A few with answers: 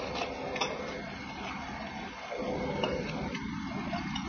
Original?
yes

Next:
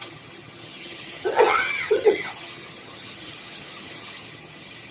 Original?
no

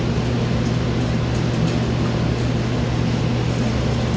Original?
yes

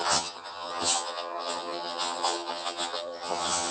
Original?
no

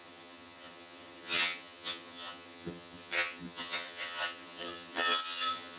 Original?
no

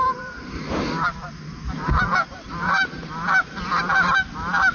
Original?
yes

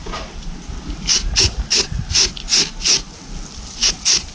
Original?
yes